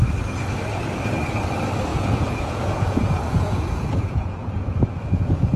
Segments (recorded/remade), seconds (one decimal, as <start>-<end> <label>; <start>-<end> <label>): 0.0-1.9 recorded; 1.9-5.6 remade